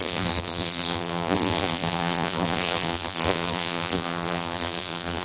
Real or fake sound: fake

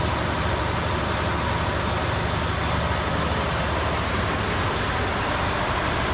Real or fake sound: real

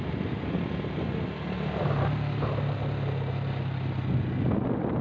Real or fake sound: real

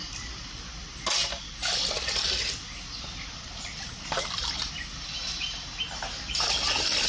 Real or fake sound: real